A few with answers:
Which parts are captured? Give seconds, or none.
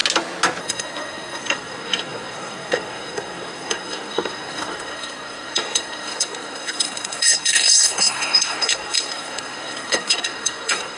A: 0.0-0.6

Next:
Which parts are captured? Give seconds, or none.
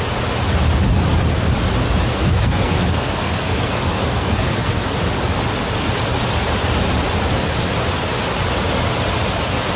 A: 0.0-2.1; 5.0-9.8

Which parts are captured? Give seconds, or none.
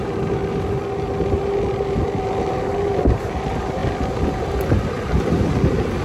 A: 0.0-6.0